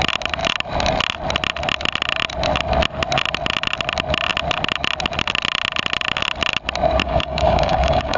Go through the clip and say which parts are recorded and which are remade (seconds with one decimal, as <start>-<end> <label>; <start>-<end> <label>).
0.0-7.0 recorded; 7.0-8.2 remade